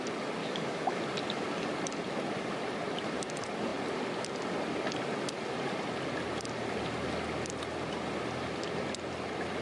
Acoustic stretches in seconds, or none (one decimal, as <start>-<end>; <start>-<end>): 0.0-0.4; 1.0-9.6